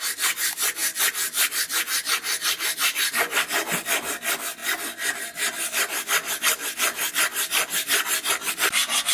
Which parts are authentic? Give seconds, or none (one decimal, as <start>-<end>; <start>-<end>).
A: 0.0-9.1

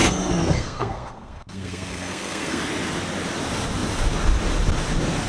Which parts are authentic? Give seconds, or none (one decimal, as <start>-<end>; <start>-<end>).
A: 2.6-5.3

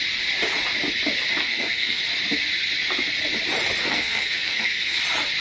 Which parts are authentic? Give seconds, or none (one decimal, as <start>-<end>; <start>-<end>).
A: 0.0-1.4; 2.0-3.8; 5.0-5.4

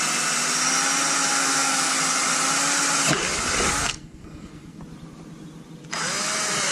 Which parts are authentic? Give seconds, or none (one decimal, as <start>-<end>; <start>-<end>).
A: 0.0-1.3; 2.0-3.8; 4.8-6.7

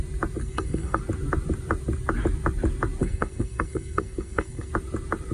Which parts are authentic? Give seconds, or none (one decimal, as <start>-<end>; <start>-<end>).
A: 0.0-0.4; 1.0-3.0; 4.7-5.3